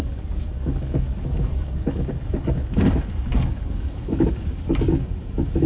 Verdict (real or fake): fake